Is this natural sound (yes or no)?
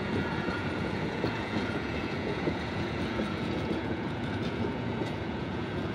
no